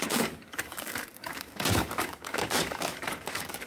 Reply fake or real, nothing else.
fake